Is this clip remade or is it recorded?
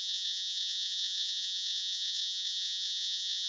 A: remade